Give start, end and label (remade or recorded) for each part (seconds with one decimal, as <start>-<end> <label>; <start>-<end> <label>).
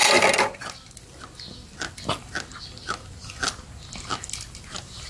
0.0-5.1 recorded